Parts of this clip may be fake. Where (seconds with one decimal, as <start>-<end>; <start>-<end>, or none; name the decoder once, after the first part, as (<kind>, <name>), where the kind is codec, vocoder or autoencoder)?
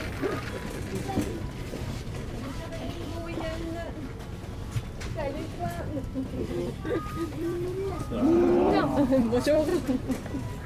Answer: 0.0-3.1 (vocoder, BigVGAN v2); 7.1-9.7